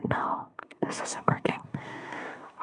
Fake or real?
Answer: fake